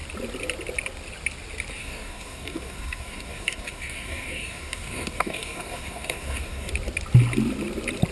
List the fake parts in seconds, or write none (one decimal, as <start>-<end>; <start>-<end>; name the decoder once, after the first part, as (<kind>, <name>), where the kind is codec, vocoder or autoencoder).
1.8-6.7 (codec, DAC)